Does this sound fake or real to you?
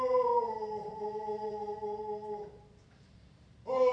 fake